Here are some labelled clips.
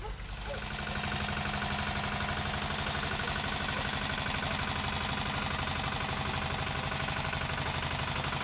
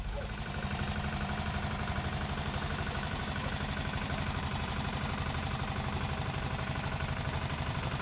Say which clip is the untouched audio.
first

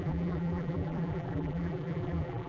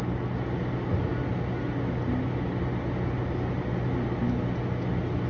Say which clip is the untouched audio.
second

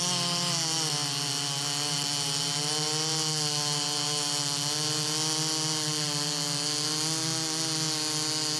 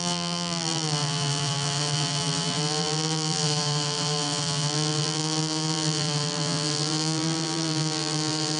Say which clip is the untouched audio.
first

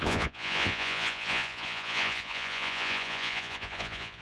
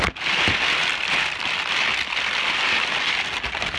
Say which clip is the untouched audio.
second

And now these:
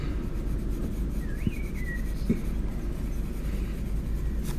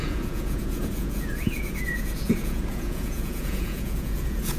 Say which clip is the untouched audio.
first